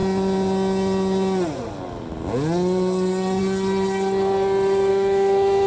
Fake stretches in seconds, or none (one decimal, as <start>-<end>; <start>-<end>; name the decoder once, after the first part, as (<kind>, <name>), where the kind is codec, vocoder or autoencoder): 4.9-5.7 (autoencoder, DAC-VAE)